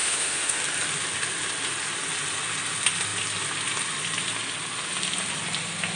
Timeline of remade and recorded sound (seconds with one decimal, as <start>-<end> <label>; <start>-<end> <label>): 0.0-0.6 remade; 0.6-6.0 recorded